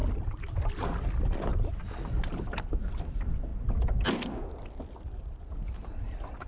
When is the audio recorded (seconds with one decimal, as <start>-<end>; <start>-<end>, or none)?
0.0-6.5